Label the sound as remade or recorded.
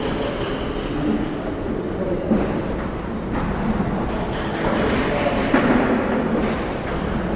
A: recorded